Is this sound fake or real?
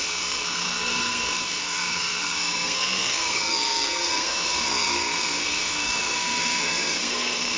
fake